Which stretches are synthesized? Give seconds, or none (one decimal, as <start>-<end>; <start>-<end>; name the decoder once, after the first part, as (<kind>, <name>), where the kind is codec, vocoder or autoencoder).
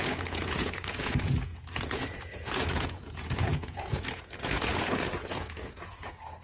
0.0-6.4 (vocoder, Vocos)